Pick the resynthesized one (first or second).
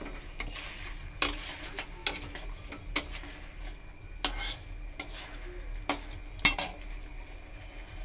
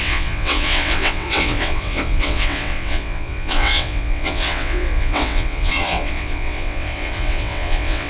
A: second